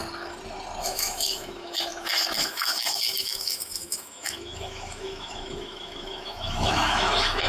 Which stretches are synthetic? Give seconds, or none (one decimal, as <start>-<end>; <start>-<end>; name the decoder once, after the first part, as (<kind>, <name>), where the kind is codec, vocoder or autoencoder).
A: 0.8-7.5 (autoencoder, DAC-VAE)

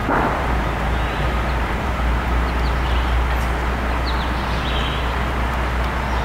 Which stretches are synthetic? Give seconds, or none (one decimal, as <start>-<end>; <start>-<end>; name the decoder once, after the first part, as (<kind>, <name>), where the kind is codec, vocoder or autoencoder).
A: 0.0-2.0 (vocoder, BigVGAN v2)